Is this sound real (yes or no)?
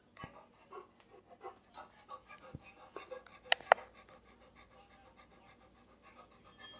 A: yes